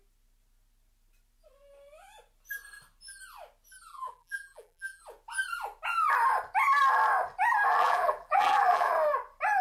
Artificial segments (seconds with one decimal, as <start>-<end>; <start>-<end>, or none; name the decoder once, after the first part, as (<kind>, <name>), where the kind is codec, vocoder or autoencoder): 3.9-5.0 (vocoder, BigVGAN v2); 7.8-8.9